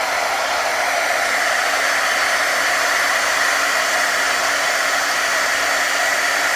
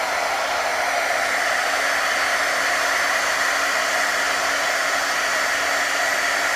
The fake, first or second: first